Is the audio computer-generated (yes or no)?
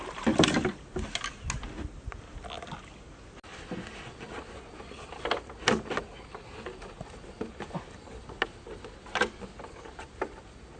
no